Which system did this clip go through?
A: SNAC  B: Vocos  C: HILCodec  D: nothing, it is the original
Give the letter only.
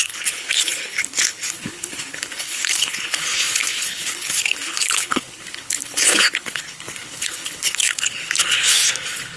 C